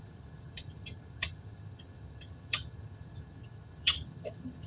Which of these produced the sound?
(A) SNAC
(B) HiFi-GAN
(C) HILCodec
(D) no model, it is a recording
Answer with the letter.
B